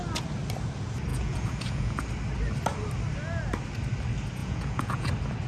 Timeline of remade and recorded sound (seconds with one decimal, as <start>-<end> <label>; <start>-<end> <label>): 0.0-1.1 recorded; 1.1-2.1 remade; 2.1-4.4 recorded; 4.4-5.1 remade; 5.1-5.5 recorded